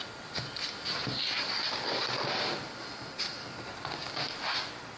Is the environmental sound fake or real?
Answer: real